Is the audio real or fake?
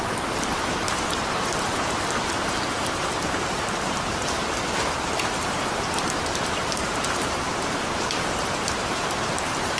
fake